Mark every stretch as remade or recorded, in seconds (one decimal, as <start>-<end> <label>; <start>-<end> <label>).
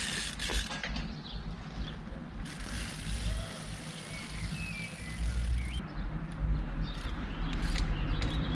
0.0-8.5 recorded